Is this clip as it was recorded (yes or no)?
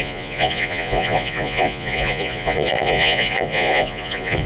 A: no